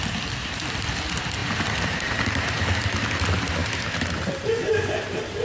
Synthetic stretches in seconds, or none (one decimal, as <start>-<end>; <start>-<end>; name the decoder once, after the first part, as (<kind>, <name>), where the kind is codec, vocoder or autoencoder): 1.4-2.6 (vocoder, BigVGAN v2); 3.6-4.3